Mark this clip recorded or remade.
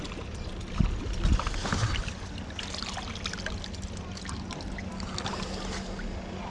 recorded